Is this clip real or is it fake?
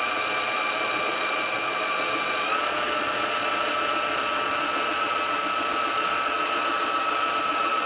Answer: fake